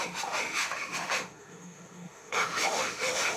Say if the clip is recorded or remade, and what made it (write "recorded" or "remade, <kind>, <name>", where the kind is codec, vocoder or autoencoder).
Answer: remade, autoencoder, DAC-VAE